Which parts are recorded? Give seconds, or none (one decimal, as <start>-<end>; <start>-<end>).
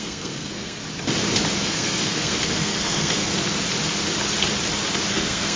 0.8-1.6; 3.3-5.1